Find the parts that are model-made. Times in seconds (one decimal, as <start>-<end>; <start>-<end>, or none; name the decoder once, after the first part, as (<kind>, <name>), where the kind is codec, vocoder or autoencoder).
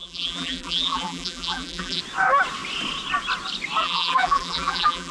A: 0.0-2.0 (vocoder, BigVGAN v2); 3.8-5.1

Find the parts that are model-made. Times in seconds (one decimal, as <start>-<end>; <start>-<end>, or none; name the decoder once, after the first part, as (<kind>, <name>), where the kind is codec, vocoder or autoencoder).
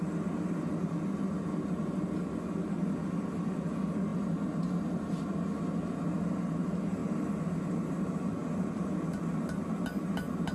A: none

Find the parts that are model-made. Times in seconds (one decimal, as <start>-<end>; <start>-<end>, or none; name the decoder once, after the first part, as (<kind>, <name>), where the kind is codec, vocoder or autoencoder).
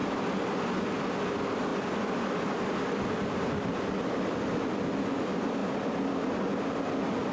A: 0.0-0.6 (vocoder, BigVGAN v2)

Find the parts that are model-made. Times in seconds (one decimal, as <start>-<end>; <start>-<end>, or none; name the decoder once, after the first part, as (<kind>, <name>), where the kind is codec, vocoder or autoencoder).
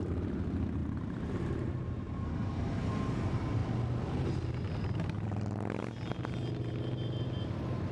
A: 0.0-3.6 (vocoder, BigVGAN v2); 7.5-7.9